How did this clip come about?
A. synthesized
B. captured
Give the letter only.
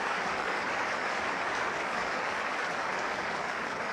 A